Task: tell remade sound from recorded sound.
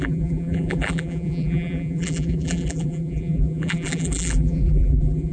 remade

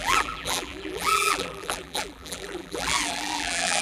remade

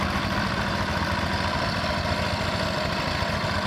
recorded